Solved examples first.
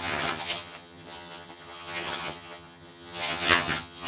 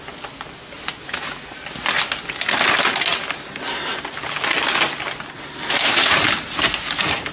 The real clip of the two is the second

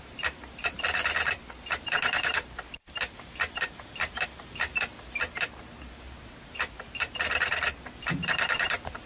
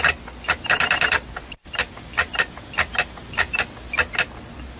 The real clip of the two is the second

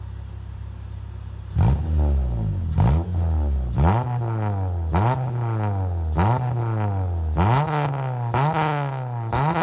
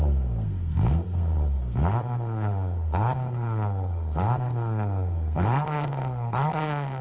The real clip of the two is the first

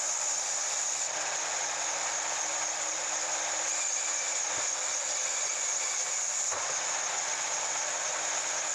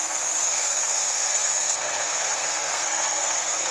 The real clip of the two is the first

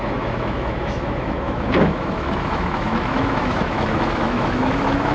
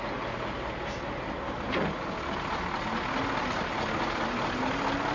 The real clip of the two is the second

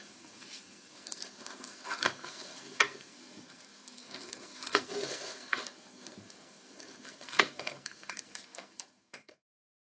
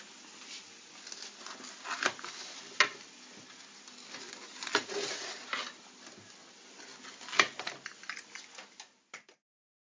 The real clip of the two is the second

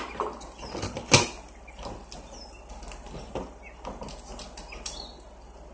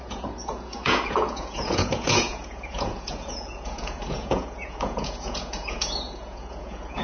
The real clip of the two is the first